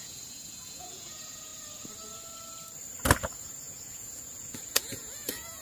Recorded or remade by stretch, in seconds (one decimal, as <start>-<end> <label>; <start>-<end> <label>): 0.0-1.5 remade; 1.5-3.4 recorded; 3.4-5.6 remade